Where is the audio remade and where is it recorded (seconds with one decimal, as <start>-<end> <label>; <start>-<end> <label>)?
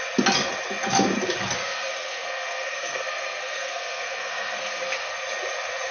0.0-1.6 recorded; 1.6-5.1 remade; 5.1-5.9 recorded